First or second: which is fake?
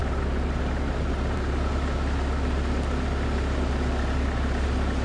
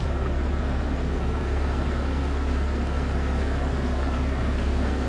second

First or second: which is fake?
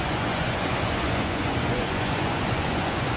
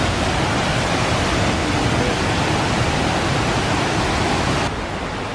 first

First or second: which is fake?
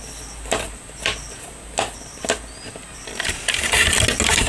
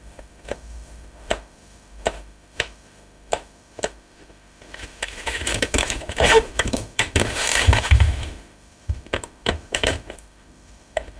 second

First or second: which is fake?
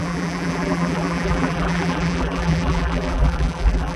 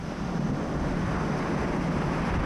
first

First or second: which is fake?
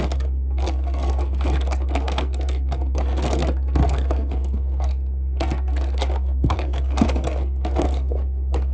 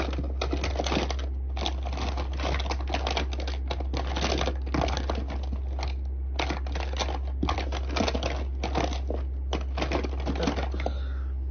first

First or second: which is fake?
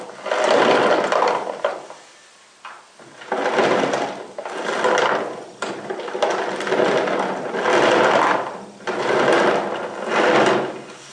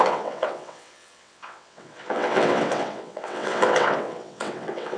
second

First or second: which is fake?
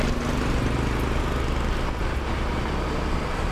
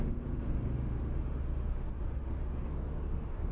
second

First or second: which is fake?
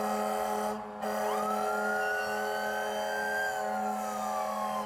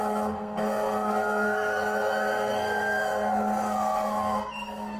second